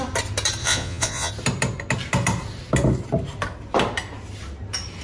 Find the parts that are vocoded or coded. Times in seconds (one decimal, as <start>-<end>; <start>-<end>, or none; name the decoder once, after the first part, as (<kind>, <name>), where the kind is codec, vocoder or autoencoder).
0.6-1.3 (vocoder, Vocos)